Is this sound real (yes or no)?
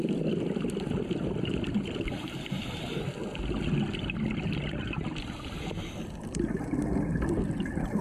yes